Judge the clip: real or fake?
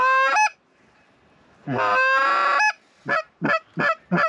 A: real